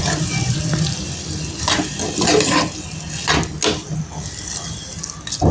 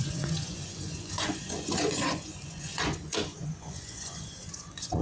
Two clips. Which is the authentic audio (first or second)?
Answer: first